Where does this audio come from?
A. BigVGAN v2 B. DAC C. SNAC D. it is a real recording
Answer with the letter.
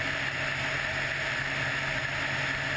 D